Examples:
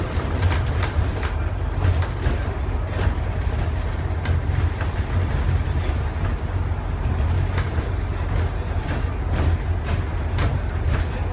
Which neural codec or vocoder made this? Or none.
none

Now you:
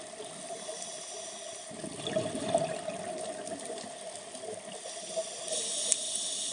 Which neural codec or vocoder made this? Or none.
none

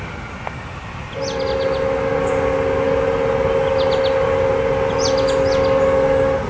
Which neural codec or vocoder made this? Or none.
none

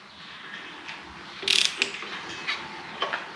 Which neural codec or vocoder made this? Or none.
none